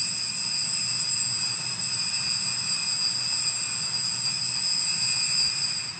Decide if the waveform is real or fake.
real